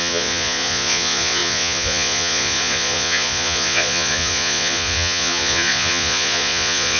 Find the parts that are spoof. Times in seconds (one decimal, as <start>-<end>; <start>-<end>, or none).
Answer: 0.0-7.0